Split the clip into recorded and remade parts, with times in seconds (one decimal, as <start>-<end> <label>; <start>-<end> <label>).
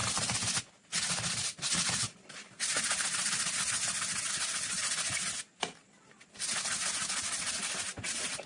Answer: 0.0-8.5 recorded